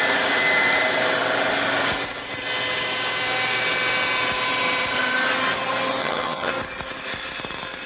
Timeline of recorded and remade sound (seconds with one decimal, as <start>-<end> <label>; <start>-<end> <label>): 0.0-6.0 recorded; 6.0-6.5 remade; 6.5-7.9 recorded